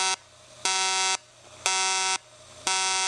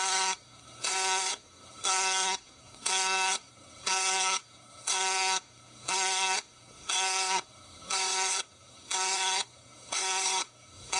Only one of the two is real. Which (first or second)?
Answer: first